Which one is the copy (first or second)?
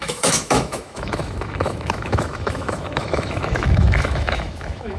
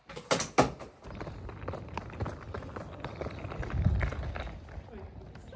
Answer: first